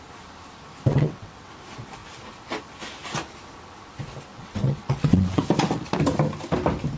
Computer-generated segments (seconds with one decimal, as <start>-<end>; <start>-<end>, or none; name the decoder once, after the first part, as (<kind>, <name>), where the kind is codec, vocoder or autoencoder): 0.9-1.5 (vocoder, WaveNeXt); 4.3-5.4